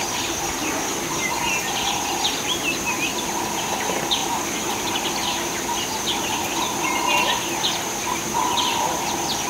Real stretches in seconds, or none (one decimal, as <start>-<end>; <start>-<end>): 0.0-9.5